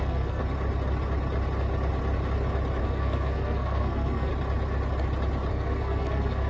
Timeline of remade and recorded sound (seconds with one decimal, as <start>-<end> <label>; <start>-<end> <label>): 0.0-0.4 remade; 0.4-2.8 recorded; 2.8-4.3 remade; 4.3-5.5 recorded; 5.5-6.5 remade